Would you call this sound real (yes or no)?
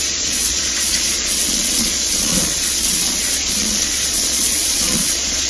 no